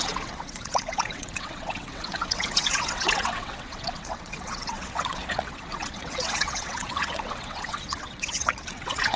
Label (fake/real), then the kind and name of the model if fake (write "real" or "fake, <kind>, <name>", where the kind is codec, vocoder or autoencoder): fake, vocoder, WaveNeXt